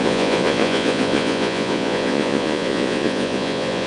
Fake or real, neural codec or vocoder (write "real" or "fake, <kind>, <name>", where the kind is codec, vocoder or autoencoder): fake, vocoder, Vocos